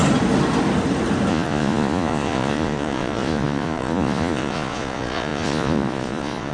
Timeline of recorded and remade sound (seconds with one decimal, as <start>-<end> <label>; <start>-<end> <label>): 0.0-1.3 recorded; 1.3-6.5 remade